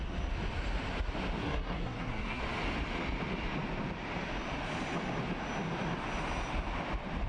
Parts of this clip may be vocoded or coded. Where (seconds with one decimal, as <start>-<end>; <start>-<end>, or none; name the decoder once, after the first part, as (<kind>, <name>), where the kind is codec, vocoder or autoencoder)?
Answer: 1.4-2.4 (codec, SNAC)